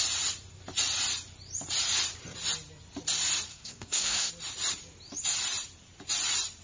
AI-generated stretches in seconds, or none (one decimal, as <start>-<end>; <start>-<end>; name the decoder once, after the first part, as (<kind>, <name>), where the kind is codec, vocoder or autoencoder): 3.5-4.3 (codec, SNAC)